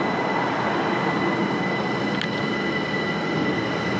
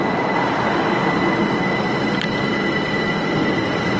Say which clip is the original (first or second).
first